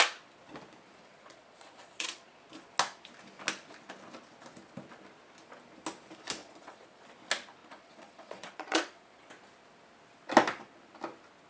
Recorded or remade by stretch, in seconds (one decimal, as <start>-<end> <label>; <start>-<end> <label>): 0.0-1.0 recorded; 1.0-2.4 remade; 2.4-6.4 recorded; 6.4-7.0 remade; 7.0-7.6 recorded; 7.6-9.3 remade; 9.3-11.5 recorded

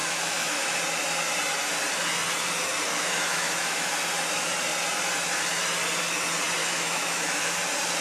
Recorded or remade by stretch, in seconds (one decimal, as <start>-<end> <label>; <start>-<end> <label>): 0.0-0.8 remade; 0.8-2.9 recorded; 2.9-3.9 remade; 3.9-6.6 recorded; 6.6-7.5 remade; 7.5-8.0 recorded